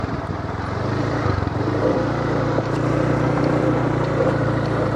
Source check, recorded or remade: remade